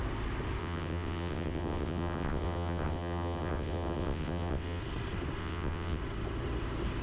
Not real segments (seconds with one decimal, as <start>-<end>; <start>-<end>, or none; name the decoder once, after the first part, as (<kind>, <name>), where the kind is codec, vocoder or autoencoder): 0.6-4.8 (vocoder, WaveNeXt); 5.4-6.0